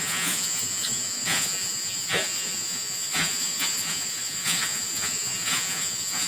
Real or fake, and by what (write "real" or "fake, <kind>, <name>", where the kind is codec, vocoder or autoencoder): fake, vocoder, Vocos